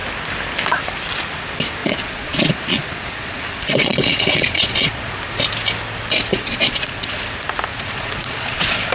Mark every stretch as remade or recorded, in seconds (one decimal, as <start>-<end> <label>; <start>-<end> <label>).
0.0-1.8 recorded; 1.8-5.1 remade; 5.1-6.3 recorded; 6.3-7.2 remade; 7.2-7.7 recorded; 7.7-8.9 remade